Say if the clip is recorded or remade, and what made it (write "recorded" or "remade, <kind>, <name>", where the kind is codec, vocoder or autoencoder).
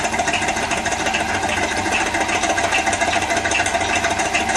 recorded